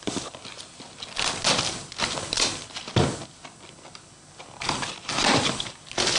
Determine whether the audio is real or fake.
real